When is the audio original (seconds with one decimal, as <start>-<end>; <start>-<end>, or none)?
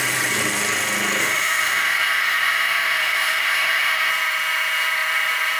0.0-1.2; 4.1-5.6